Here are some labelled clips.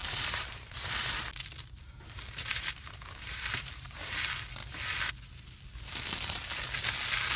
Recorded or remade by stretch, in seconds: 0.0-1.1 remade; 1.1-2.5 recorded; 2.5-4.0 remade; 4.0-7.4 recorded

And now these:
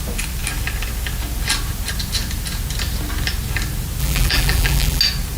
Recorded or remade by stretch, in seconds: 0.0-4.0 recorded; 4.0-5.0 remade; 5.0-5.4 recorded

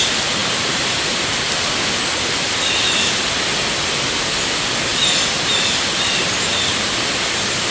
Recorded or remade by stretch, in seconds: 0.0-0.4 recorded; 0.4-1.5 remade; 1.5-4.9 recorded; 4.9-7.1 remade; 7.1-7.7 recorded

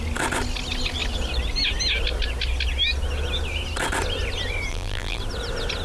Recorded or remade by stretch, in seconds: 0.0-4.7 recorded; 4.7-5.2 remade; 5.2-5.8 recorded

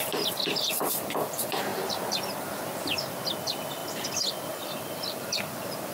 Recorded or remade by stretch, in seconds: 0.0-1.7 recorded; 1.7-2.6 remade; 2.6-5.9 recorded

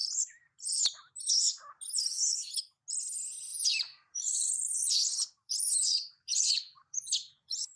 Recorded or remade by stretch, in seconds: 0.0-1.1 remade; 1.1-3.5 recorded; 3.5-7.8 remade